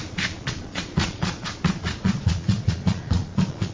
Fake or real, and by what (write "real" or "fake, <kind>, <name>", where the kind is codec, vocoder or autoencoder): fake, vocoder, Vocos